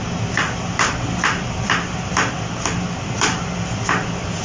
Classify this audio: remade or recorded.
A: recorded